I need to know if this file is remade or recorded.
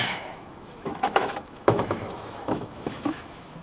remade